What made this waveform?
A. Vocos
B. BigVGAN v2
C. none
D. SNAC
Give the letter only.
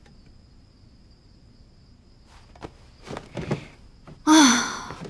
C